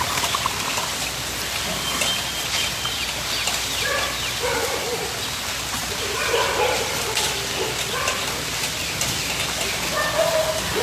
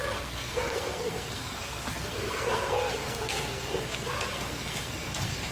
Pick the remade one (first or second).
second